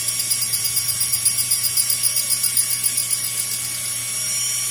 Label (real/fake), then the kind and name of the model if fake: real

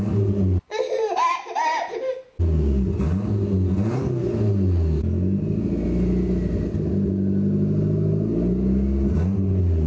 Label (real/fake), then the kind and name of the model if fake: real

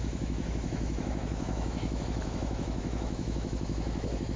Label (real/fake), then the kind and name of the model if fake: fake, autoencoder, DAC-VAE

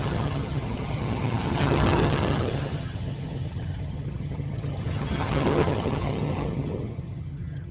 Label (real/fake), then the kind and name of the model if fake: fake, vocoder, HiFi-GAN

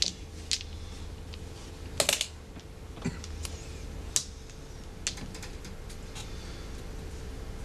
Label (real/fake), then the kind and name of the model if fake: real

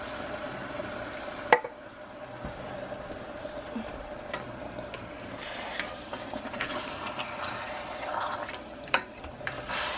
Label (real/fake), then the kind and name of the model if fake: fake, vocoder, BigVGAN v2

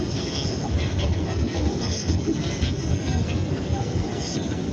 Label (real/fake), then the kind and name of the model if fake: fake, codec, SNAC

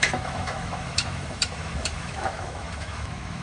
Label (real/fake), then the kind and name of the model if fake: fake, autoencoder, DAC-VAE